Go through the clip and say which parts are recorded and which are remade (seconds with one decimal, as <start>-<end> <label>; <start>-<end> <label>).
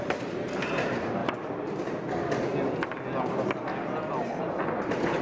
0.0-1.2 remade; 1.2-4.3 recorded; 4.3-5.2 remade